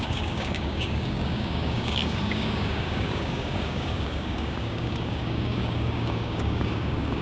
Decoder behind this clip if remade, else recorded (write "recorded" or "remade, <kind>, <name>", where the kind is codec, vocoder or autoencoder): remade, codec, DAC